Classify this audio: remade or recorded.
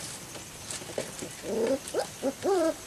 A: remade